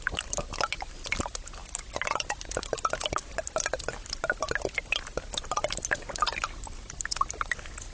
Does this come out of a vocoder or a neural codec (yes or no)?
no